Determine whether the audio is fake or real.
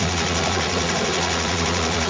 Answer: fake